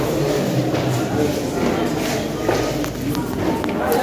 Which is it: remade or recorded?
recorded